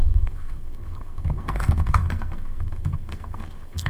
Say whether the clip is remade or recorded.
remade